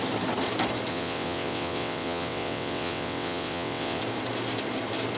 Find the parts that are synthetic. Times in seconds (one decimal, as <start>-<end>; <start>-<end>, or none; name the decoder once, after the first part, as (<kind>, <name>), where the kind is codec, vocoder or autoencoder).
0.9-4.0 (vocoder, WaveNeXt)